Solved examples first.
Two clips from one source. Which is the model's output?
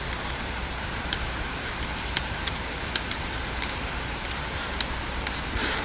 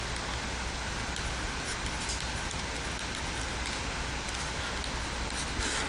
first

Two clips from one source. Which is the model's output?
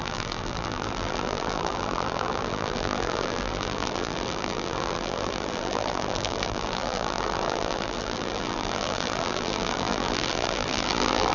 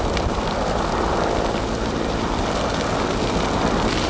first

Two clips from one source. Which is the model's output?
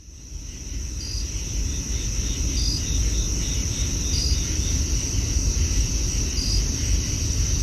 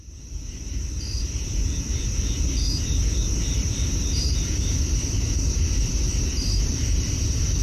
second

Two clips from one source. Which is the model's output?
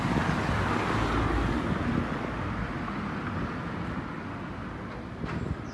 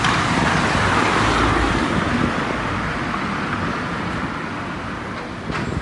second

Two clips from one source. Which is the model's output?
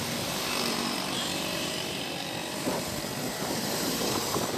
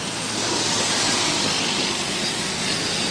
first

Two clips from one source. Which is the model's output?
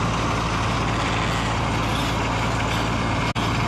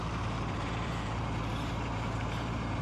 second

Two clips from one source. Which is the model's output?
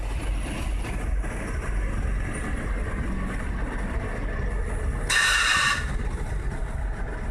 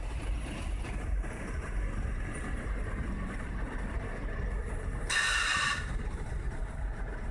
second